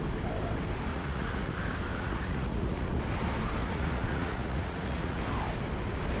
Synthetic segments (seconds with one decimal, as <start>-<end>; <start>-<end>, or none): 0.9-1.5; 1.9-3.0; 3.6-5.2